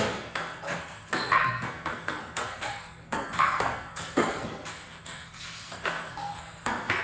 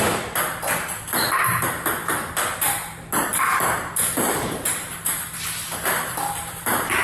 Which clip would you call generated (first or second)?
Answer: first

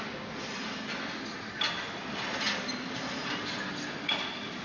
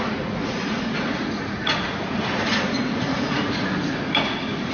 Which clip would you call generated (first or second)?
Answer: second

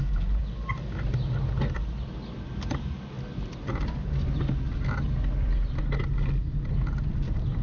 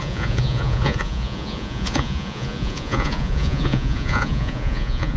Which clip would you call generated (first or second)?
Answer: second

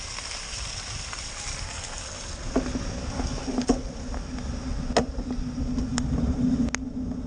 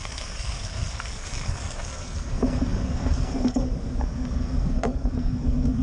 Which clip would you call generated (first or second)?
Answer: second